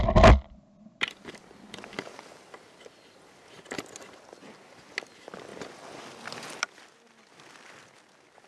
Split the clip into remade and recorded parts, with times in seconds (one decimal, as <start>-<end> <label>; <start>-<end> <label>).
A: 0.0-8.5 recorded